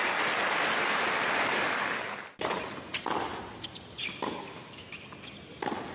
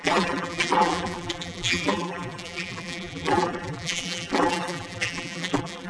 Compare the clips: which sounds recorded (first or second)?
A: first